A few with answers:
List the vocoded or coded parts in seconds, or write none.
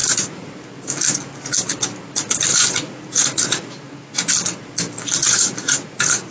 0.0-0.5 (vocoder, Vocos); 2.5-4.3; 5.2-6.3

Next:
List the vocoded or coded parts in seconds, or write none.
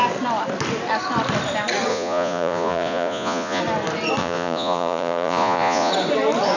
1.9-3.6 (vocoder, Vocos); 4.2-5.9